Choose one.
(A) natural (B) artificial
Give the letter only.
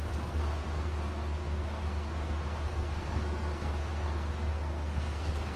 B